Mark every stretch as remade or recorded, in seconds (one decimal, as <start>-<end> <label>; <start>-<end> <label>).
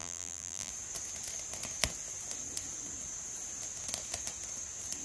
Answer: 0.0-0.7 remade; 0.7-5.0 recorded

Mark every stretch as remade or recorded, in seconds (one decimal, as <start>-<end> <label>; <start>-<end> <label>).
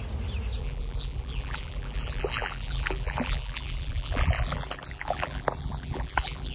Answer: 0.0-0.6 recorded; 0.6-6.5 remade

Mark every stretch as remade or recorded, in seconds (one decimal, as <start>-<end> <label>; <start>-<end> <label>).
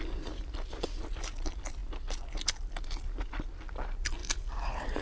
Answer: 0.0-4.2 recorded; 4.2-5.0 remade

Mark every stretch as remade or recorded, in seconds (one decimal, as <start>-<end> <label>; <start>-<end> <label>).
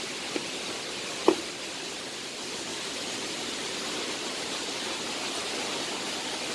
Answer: 0.0-2.7 recorded; 2.7-5.2 remade; 5.2-6.5 recorded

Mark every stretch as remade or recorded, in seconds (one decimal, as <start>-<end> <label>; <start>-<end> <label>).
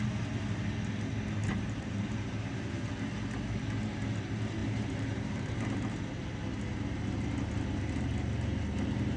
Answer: 0.0-1.4 recorded; 1.4-2.9 remade; 2.9-4.6 recorded; 4.6-6.0 remade; 6.0-9.2 recorded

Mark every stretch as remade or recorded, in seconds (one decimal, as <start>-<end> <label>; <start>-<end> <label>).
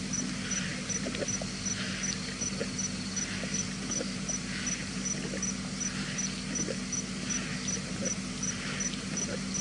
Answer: 0.0-9.6 recorded